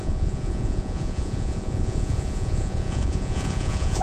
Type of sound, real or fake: fake